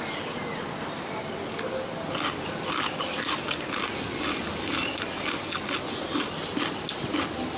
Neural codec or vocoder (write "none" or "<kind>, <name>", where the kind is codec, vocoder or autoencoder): none